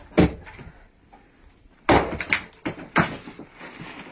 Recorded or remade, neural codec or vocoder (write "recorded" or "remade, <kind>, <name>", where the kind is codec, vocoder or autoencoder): recorded